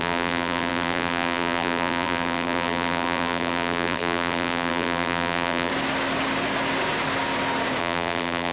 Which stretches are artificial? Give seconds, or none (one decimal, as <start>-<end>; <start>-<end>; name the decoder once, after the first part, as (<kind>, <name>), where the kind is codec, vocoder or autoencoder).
0.0-5.7 (vocoder, BigVGAN v2); 7.8-8.5

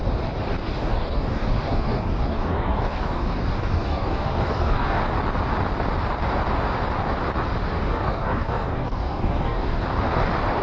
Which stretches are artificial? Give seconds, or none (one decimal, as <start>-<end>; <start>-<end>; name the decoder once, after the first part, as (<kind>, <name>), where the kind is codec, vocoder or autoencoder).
0.6-5.0 (codec, DAC); 7.7-9.8

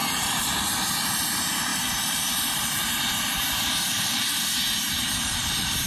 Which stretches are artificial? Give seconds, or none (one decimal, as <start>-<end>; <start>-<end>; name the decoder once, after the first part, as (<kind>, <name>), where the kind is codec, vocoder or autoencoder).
0.0-5.9 (vocoder, BigVGAN v2)

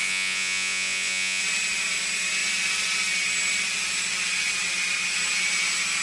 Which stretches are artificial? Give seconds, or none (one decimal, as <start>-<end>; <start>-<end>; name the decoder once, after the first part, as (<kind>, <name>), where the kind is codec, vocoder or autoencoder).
0.0-1.4 (vocoder, Vocos)

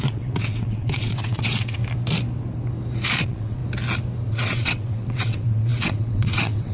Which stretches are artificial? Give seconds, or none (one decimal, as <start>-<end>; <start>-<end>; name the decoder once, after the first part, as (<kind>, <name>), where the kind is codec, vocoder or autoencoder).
0.0-1.8 (vocoder, WaveNeXt); 3.2-3.6; 4.3-6.7

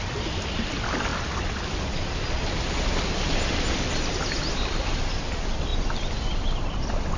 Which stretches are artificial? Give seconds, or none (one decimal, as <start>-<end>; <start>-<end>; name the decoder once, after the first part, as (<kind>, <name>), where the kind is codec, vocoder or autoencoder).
0.0-7.2 (vocoder, BigVGAN v2)